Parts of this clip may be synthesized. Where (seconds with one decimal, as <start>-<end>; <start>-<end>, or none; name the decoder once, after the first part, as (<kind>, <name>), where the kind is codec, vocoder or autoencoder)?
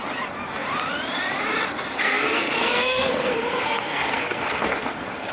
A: 2.0-5.3 (codec, SNAC)